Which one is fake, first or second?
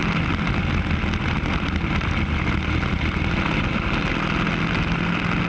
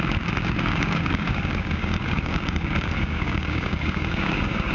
second